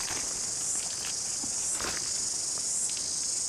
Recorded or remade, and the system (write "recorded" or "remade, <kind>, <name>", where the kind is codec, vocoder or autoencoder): recorded